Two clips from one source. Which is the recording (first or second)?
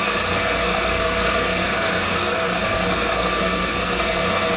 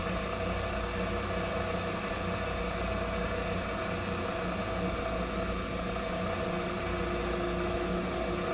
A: second